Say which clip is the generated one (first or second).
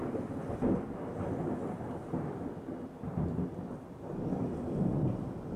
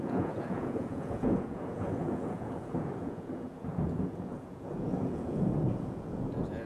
second